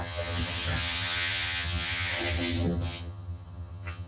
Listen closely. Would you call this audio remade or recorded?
remade